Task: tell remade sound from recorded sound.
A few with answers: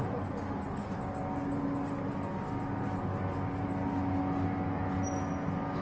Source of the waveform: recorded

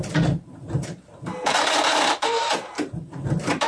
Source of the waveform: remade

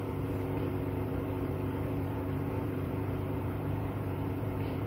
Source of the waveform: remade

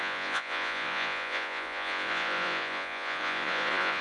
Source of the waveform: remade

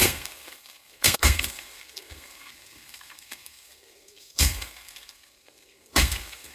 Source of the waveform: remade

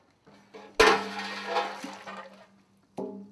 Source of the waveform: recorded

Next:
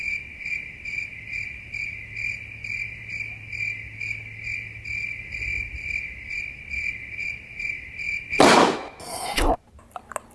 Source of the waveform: recorded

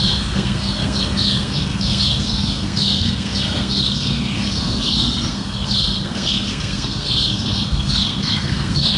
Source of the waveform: remade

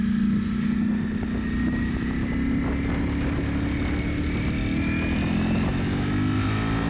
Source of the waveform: recorded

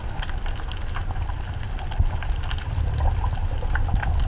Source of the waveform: recorded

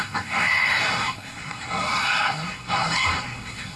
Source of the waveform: remade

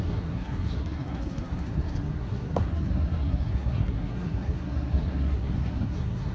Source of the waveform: remade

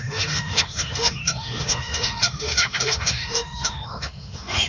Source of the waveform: remade